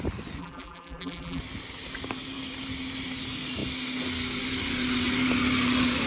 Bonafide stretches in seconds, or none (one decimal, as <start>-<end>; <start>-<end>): 0.0-0.4; 1.4-6.1